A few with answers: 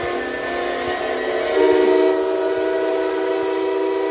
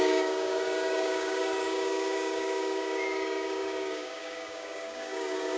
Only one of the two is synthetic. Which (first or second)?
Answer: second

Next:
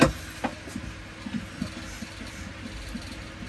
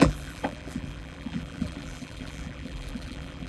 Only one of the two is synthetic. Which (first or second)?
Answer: second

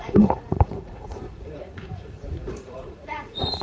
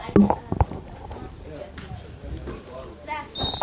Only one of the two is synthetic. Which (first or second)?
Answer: first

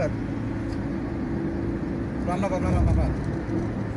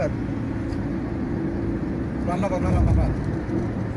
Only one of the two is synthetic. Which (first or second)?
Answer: second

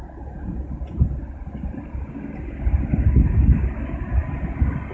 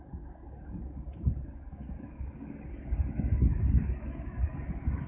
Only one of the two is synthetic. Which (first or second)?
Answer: second